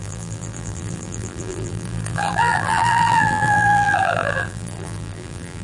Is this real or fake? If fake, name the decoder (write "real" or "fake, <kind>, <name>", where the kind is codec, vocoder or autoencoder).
fake, vocoder, BigVGAN v2